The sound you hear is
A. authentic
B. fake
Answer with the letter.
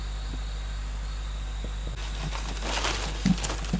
A